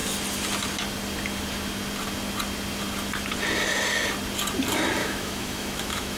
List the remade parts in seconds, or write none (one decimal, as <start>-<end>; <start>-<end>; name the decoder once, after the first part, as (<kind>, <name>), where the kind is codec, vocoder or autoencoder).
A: 5.0-6.2 (autoencoder, DAC-VAE)